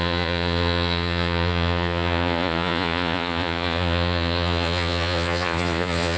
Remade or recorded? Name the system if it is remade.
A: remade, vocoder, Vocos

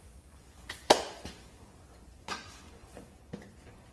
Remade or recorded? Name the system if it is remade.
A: remade, vocoder, Vocos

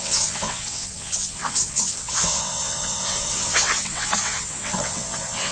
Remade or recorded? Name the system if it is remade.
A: remade, vocoder, WaveNeXt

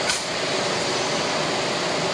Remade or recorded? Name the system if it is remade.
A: recorded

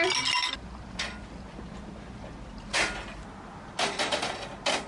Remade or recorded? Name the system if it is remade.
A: recorded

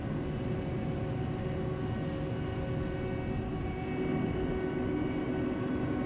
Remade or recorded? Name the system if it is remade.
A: recorded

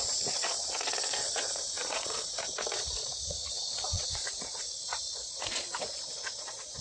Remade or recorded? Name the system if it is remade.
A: remade, vocoder, Vocos